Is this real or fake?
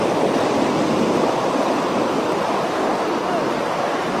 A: real